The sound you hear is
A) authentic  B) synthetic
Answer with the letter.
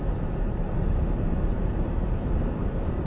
B